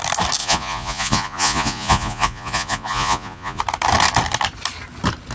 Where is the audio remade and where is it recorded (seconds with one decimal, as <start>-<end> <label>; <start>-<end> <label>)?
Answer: 0.0-0.4 recorded; 0.4-3.6 remade; 3.6-5.3 recorded